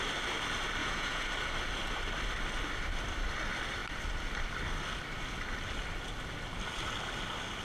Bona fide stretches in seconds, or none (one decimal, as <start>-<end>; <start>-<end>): 0.0-0.8; 1.3-7.6